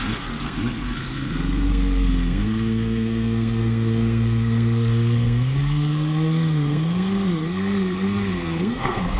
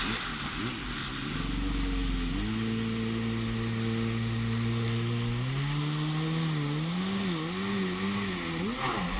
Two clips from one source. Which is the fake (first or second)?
first